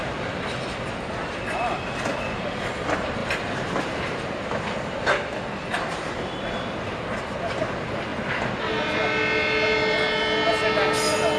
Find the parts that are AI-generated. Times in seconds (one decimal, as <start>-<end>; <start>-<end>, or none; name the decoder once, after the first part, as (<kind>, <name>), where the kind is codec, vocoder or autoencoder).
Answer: none

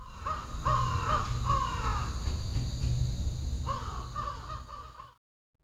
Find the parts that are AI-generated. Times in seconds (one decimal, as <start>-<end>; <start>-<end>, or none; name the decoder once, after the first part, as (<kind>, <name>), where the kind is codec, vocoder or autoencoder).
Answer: none